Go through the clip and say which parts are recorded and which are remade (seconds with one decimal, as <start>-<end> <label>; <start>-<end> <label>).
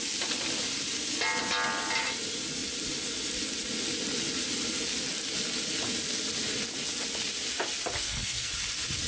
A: 0.0-8.0 recorded; 8.0-8.5 remade; 8.5-9.1 recorded